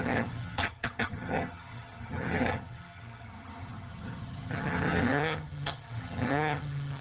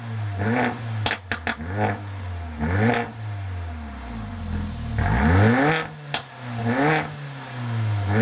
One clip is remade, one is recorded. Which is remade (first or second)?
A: first